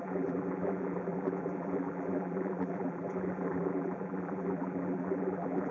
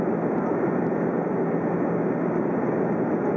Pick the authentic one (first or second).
second